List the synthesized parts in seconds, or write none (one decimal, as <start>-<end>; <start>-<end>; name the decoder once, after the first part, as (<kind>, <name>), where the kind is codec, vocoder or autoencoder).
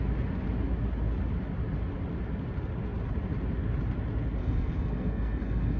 4.4-5.8 (codec, SNAC)